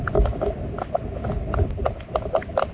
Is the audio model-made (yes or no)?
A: no